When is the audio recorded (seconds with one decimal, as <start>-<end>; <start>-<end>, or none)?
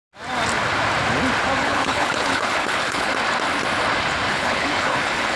0.0-1.6; 3.1-4.3